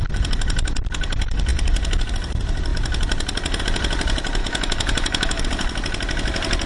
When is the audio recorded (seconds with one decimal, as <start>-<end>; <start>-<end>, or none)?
0.0-4.4; 5.4-6.7